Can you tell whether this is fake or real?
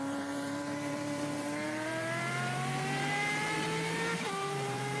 fake